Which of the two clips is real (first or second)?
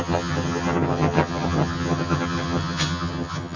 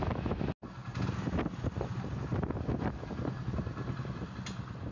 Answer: second